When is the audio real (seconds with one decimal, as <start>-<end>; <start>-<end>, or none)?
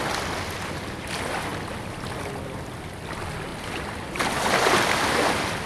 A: 0.0-3.5